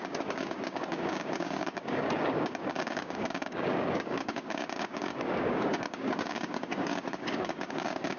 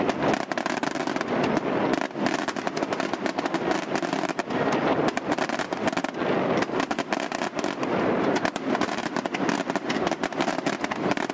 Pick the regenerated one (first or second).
first